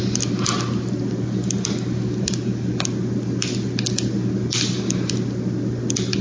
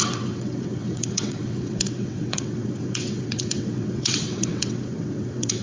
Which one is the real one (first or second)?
first